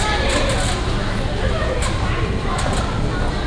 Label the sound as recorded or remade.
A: recorded